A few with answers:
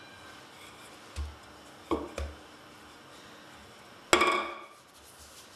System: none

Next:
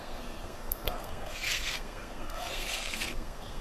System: codec, SNAC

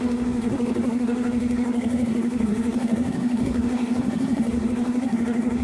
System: codec, SNAC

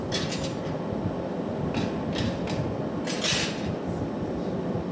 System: none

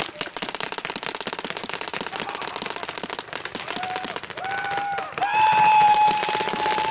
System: none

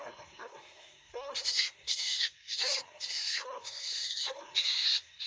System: codec, SNAC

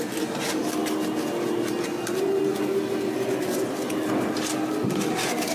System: none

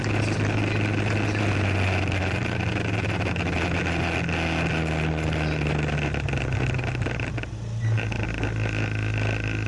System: none